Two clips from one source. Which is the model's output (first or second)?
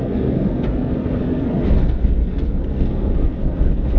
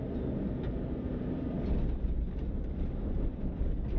first